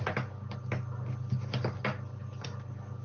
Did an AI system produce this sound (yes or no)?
no